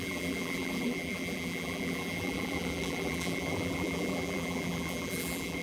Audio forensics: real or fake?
fake